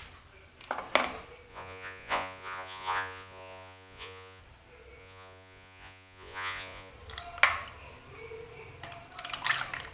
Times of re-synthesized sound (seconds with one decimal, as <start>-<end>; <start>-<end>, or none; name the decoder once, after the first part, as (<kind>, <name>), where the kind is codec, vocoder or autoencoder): 1.5-4.4 (vocoder, Vocos); 5.0-6.9